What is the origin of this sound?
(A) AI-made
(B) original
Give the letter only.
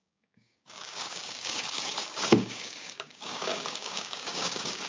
A